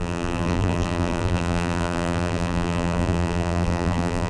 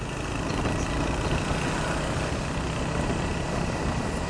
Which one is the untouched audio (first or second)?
second